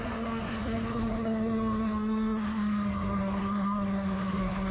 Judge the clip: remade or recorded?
remade